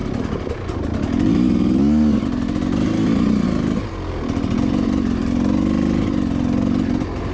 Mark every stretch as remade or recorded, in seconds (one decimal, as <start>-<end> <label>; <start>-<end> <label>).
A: 0.0-7.3 recorded